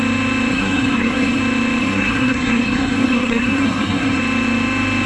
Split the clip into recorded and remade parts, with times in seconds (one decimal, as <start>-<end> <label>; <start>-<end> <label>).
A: 0.0-0.5 recorded; 0.5-1.4 remade; 1.4-1.8 recorded; 1.8-4.2 remade; 4.2-5.1 recorded